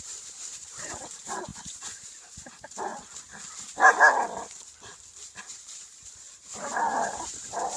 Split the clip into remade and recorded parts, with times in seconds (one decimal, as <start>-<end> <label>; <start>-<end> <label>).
0.0-2.9 remade; 2.9-5.4 recorded; 5.4-7.8 remade